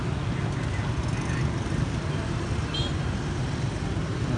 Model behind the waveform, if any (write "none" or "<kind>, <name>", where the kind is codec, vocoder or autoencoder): none